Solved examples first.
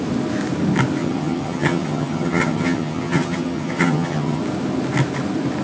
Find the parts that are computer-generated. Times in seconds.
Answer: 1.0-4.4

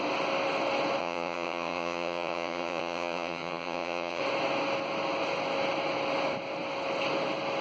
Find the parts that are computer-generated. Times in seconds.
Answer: 1.0-4.2

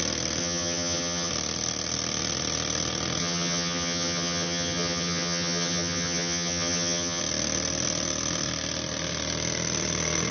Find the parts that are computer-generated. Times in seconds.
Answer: 0.4-1.3; 3.2-7.2

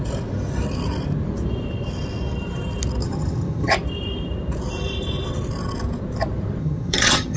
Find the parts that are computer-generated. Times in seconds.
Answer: 3.0-3.7; 6.6-7.4

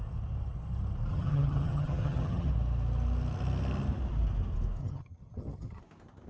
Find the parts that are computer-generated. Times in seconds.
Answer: 1.1-2.5; 4.8-5.8

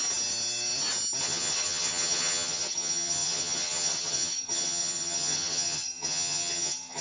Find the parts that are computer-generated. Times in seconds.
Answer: 1.2-7.0

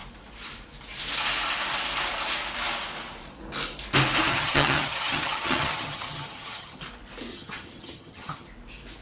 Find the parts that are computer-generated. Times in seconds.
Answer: 4.3-6.8; 7.3-8.5